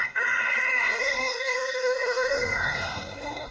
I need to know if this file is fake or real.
fake